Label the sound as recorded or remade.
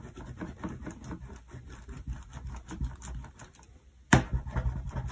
recorded